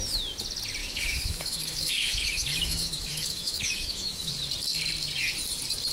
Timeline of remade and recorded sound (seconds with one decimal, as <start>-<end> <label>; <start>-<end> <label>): 0.0-0.8 recorded; 0.8-4.3 remade; 4.3-5.9 recorded